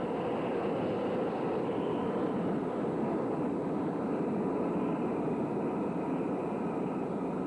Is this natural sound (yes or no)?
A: yes